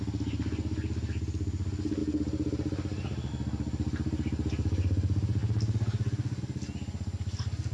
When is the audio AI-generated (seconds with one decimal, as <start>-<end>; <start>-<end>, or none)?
none